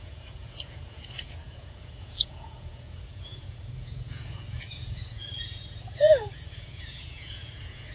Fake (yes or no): yes